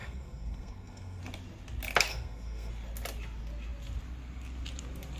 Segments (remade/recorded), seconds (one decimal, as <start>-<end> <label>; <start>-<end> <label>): 0.0-1.2 remade; 1.2-2.1 recorded; 2.1-2.7 remade; 2.7-5.2 recorded